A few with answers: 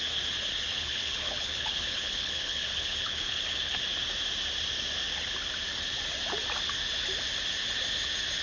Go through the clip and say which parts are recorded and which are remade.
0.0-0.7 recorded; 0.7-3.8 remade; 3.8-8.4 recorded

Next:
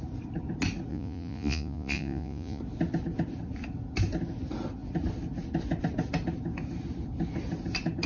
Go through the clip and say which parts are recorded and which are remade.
0.0-0.9 recorded; 0.9-2.6 remade; 2.6-8.1 recorded

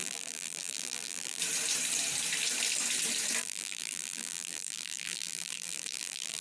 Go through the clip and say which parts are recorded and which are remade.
0.0-1.4 remade; 1.4-3.4 recorded; 3.4-6.4 remade

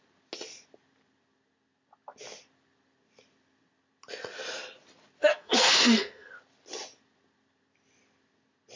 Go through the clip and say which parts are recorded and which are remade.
0.0-5.2 recorded; 5.2-6.3 remade; 6.3-8.8 recorded

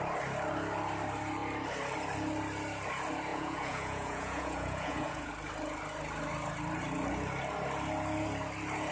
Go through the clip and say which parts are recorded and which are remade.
0.0-3.3 recorded; 3.3-5.3 remade; 5.3-8.9 recorded

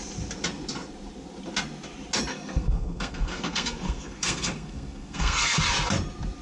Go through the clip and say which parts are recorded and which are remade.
0.0-2.3 recorded; 2.3-5.6 remade; 5.6-6.4 recorded

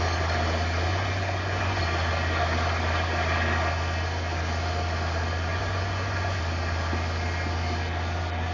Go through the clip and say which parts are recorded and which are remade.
0.0-0.9 recorded; 0.9-1.8 remade; 1.8-5.5 recorded; 5.5-6.4 remade; 6.4-8.5 recorded